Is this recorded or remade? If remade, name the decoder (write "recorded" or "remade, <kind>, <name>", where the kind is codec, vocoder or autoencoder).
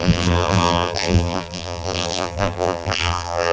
remade, vocoder, BigVGAN v2